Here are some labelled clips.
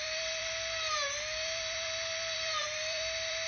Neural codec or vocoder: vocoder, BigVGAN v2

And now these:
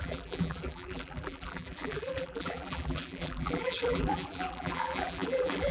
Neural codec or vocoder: vocoder, BigVGAN v2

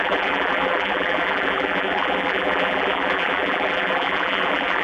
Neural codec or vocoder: vocoder, BigVGAN v2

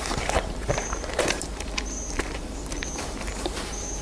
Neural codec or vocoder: vocoder, BigVGAN v2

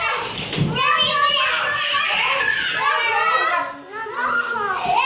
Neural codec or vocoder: none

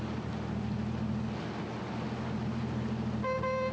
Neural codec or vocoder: none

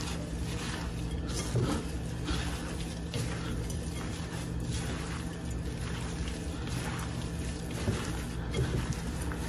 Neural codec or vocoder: none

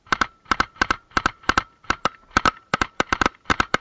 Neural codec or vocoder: vocoder, BigVGAN v2